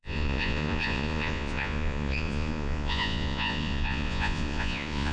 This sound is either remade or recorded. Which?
remade